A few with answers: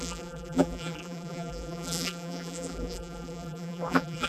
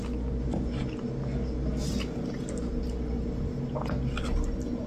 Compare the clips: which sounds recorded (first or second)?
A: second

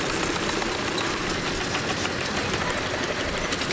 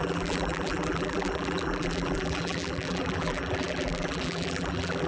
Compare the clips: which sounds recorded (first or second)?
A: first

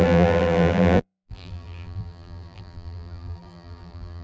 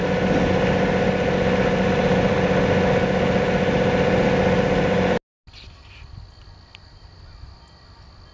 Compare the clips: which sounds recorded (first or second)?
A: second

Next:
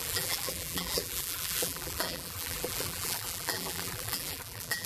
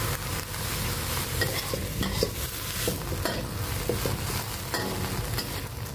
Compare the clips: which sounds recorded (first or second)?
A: second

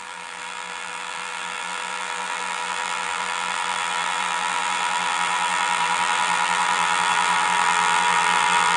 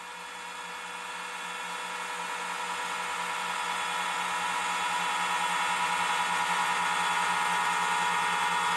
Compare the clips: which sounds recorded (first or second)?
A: second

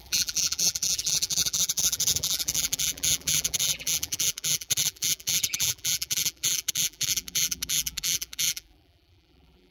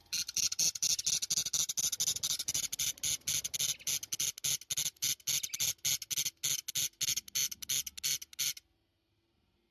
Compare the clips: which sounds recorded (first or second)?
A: second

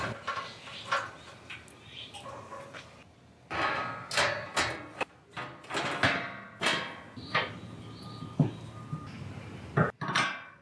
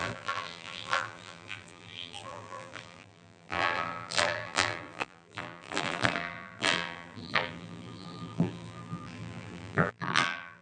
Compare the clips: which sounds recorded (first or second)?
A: first